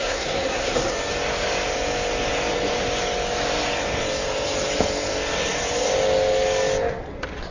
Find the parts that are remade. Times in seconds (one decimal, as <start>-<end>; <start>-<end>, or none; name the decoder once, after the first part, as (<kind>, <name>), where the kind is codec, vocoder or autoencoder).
0.0-0.9 (codec, SNAC)